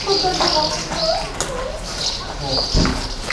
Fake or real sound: real